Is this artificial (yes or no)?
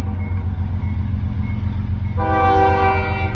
no